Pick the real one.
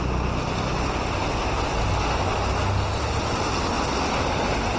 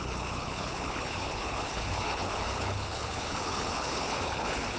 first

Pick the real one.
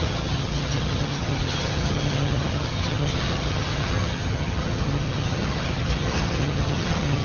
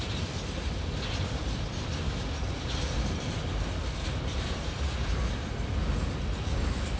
second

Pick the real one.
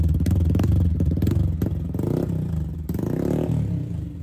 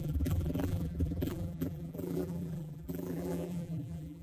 first